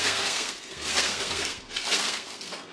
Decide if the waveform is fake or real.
fake